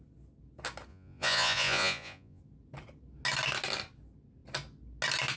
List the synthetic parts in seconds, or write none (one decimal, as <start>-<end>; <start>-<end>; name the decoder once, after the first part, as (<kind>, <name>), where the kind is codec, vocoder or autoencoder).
0.9-2.4 (vocoder, Vocos)